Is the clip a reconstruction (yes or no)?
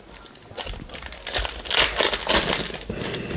no